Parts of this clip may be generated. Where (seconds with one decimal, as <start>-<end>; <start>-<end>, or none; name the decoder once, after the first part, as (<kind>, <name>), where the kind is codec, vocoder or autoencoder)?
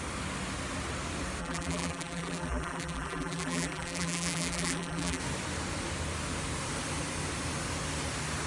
1.4-5.2 (vocoder, BigVGAN v2)